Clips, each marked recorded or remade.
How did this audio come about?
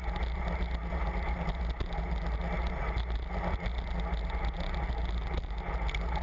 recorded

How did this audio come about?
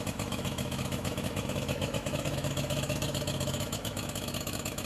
remade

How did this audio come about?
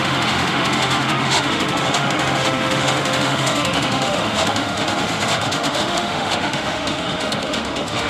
remade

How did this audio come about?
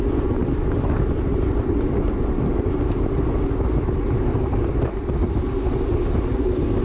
recorded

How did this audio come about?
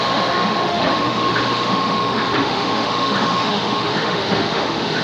remade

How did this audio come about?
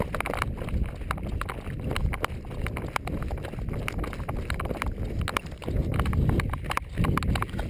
recorded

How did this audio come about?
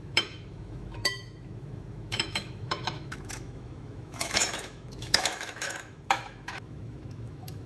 remade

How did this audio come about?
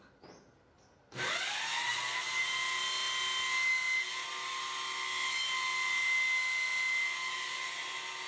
recorded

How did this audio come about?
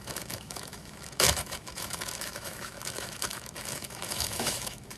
remade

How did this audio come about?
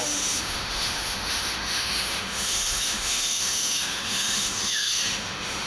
remade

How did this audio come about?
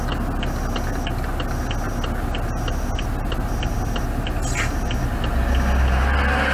recorded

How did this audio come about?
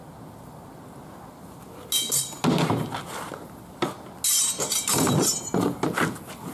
recorded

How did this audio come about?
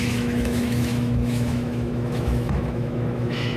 remade